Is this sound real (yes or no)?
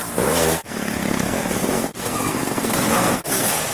no